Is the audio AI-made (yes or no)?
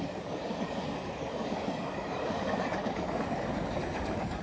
yes